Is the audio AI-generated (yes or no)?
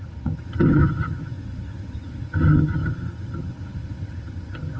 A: yes